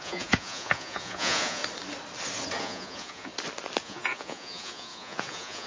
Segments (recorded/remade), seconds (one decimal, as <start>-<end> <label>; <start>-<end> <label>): 0.0-1.6 remade; 1.6-2.6 recorded; 2.6-3.3 remade; 3.3-3.8 recorded; 3.8-5.7 remade